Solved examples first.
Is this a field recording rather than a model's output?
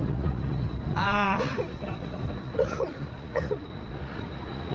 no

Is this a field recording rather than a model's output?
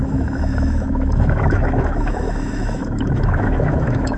no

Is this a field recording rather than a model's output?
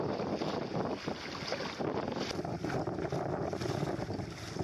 yes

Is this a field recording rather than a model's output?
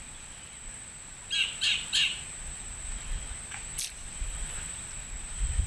yes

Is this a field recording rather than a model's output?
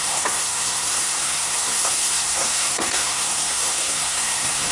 no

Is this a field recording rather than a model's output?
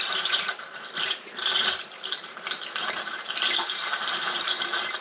no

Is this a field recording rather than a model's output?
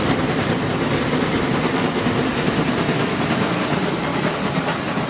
no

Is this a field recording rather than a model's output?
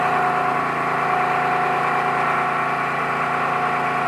yes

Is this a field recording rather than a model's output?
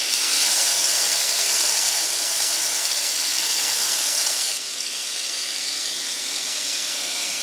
no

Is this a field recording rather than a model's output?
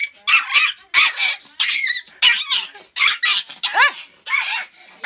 yes